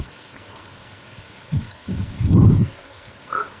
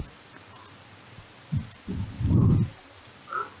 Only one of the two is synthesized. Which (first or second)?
first